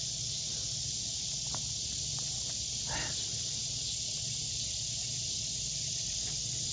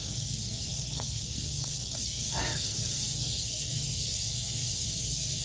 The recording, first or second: first